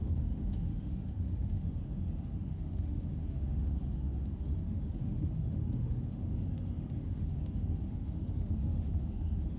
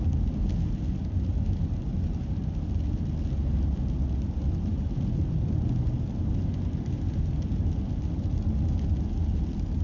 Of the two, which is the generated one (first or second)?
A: first